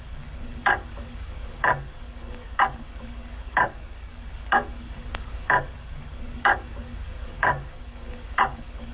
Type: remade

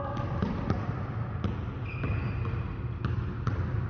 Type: recorded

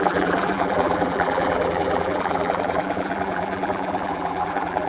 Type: remade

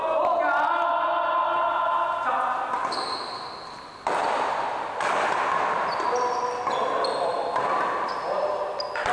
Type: recorded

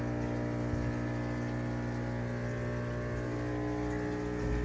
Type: recorded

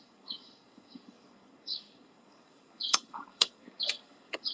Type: remade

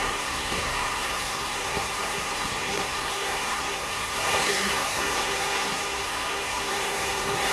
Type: remade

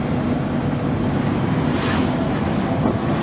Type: recorded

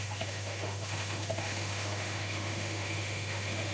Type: remade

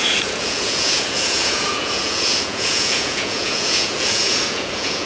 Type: remade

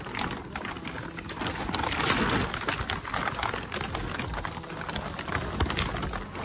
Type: recorded